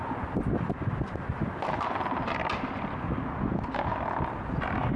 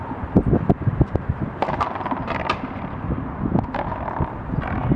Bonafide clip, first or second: first